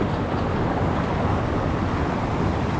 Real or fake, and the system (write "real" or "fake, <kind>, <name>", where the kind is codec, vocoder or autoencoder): real